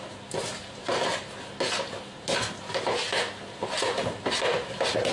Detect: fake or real real